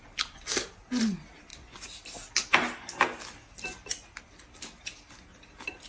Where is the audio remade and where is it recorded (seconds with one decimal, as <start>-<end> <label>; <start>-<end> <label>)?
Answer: 0.0-5.9 recorded

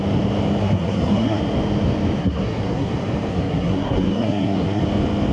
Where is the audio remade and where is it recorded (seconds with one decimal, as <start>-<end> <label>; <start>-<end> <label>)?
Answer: 0.0-0.6 recorded; 0.6-1.4 remade; 1.4-2.2 recorded; 2.2-2.9 remade; 2.9-3.3 recorded; 3.3-4.8 remade; 4.8-5.3 recorded

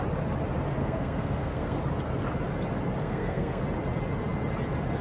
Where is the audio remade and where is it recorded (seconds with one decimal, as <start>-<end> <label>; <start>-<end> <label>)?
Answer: 0.0-0.8 recorded; 0.8-1.8 remade; 1.8-3.0 recorded; 3.0-3.6 remade; 3.6-5.0 recorded

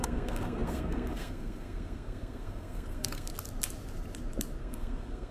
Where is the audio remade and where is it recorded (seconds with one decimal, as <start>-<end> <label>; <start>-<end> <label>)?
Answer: 0.0-3.3 remade; 3.3-4.6 recorded; 4.6-5.3 remade

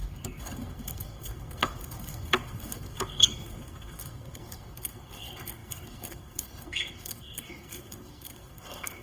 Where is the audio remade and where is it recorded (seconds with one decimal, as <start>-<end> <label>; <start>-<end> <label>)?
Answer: 0.0-9.0 remade

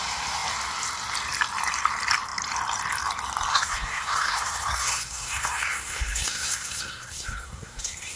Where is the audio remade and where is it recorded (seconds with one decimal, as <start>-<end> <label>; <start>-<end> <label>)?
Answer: 0.0-3.5 recorded; 3.5-8.2 remade